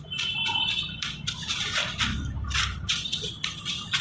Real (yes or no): no